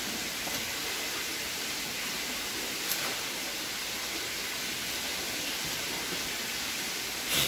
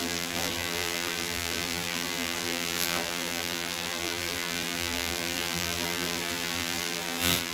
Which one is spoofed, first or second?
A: second